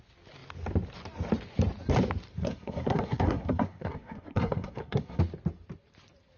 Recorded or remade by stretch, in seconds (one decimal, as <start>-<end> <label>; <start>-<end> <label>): 0.0-2.4 recorded; 2.4-5.2 remade; 5.2-6.4 recorded